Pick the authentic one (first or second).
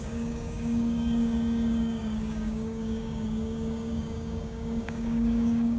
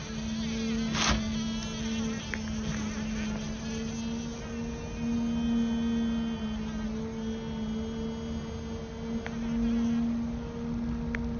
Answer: second